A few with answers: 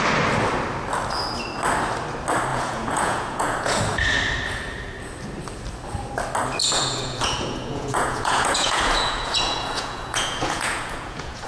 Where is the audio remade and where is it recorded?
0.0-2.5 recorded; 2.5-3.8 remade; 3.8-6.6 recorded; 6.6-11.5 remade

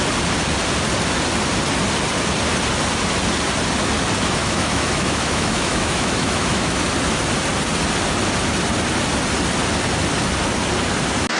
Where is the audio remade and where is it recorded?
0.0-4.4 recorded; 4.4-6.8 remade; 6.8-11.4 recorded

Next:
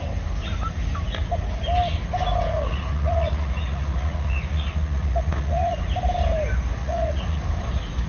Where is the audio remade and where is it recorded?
0.0-2.5 recorded; 2.5-5.8 remade; 5.8-6.8 recorded; 6.8-7.4 remade; 7.4-8.1 recorded

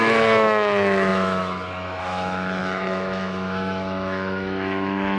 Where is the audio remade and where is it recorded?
0.0-5.2 remade

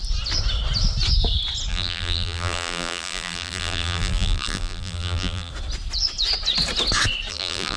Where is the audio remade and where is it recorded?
0.0-1.7 recorded; 1.7-5.5 remade; 5.5-7.3 recorded; 7.3-7.8 remade

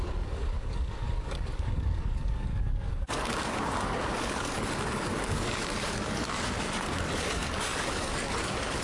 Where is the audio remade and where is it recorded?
0.0-8.8 remade

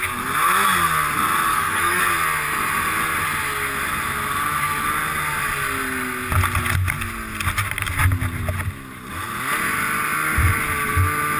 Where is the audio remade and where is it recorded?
0.0-1.5 recorded; 1.5-2.0 remade; 2.0-11.4 recorded

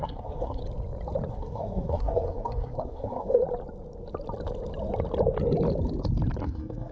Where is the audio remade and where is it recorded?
0.0-0.6 remade; 0.6-1.3 recorded; 1.3-3.4 remade; 3.4-6.4 recorded; 6.4-6.9 remade